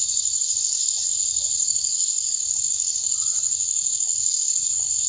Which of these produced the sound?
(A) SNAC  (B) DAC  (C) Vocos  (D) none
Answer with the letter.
B